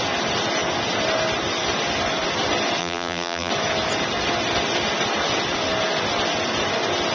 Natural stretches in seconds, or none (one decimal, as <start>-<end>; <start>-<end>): 0.0-2.8; 3.5-7.1